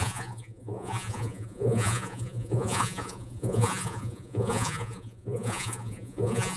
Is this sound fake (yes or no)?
yes